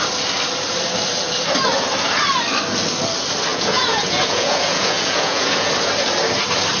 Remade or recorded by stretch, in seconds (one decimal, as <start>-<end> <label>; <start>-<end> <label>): 0.0-3.5 recorded; 3.5-5.7 remade; 5.7-6.8 recorded